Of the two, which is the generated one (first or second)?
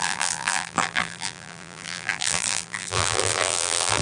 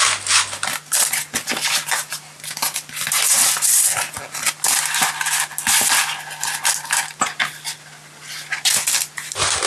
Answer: first